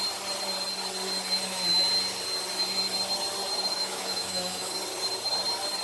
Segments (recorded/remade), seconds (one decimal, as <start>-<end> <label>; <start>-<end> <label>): 0.0-3.7 recorded; 3.7-4.7 remade; 4.7-5.8 recorded